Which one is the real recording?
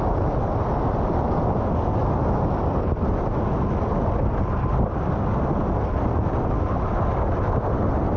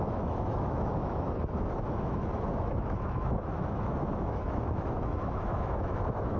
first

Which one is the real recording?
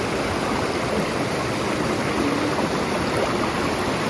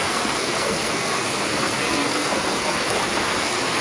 first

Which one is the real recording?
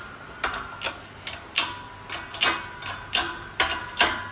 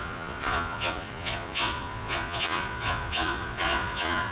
first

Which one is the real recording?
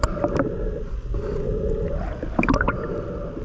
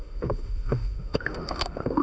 first